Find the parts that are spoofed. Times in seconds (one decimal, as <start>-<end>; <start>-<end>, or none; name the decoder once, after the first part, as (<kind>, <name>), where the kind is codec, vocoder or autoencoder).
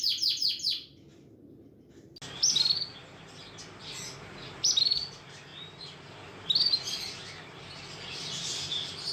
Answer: none